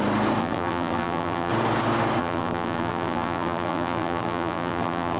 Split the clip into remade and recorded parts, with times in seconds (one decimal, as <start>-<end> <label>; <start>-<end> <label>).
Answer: 0.0-0.4 recorded; 0.4-1.5 remade; 1.5-2.2 recorded; 2.2-5.2 remade